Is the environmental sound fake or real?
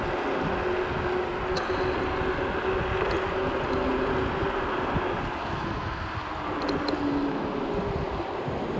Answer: real